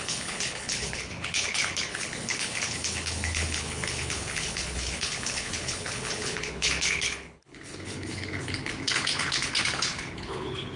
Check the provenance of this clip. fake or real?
fake